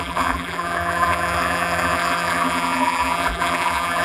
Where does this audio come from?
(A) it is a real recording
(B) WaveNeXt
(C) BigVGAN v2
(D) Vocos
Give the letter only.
C